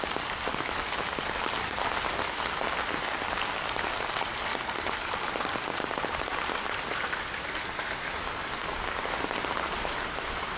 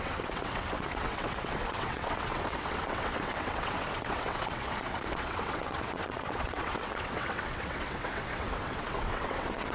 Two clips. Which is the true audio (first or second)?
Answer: first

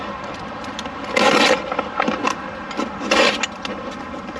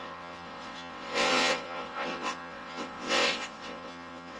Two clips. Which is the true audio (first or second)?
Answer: first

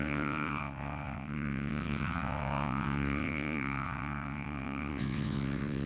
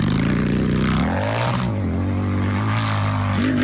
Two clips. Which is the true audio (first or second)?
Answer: second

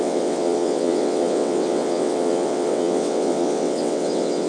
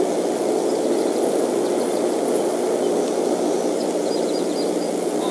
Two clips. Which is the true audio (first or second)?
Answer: second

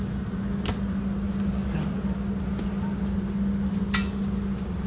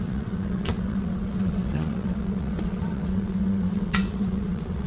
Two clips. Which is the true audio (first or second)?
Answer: first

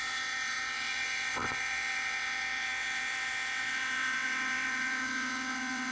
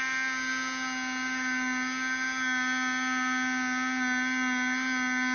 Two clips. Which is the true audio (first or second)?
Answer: second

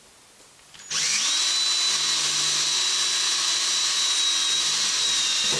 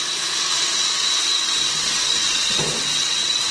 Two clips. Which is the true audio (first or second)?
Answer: first